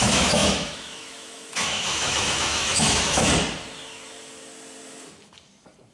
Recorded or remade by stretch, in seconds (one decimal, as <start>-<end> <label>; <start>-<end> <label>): 0.0-3.3 remade; 3.3-5.9 recorded